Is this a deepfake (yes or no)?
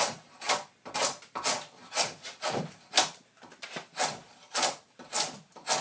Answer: no